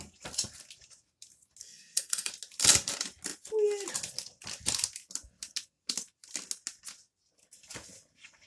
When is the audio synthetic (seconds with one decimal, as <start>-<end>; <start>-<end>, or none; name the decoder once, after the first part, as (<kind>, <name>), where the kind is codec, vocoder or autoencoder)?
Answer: 1.6-2.3 (codec, SNAC)